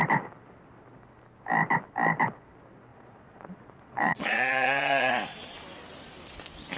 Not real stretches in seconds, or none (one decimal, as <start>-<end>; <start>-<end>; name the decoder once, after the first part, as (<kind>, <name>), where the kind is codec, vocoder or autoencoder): 2.9-5.1 (vocoder, Vocos)